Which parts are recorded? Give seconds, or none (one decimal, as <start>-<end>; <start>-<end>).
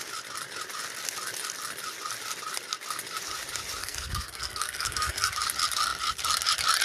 0.0-3.8; 5.3-6.8